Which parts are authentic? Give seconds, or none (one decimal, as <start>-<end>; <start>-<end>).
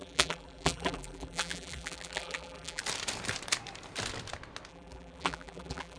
2.8-4.7